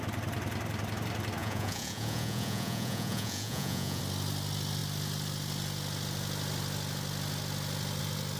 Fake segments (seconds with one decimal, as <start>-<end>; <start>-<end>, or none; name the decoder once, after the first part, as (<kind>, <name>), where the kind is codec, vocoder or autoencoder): 1.4-4.0 (vocoder, Vocos)